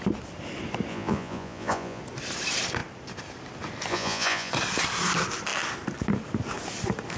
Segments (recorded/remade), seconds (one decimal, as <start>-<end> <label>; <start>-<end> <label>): 0.0-0.9 recorded; 0.9-2.0 remade; 2.0-3.9 recorded; 3.9-4.5 remade; 4.5-7.2 recorded